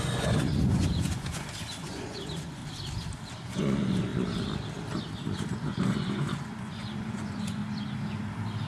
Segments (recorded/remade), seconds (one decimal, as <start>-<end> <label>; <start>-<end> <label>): 0.0-2.6 remade; 2.6-3.3 recorded; 3.3-4.1 remade; 4.1-5.5 recorded; 5.5-7.6 remade; 7.6-8.7 recorded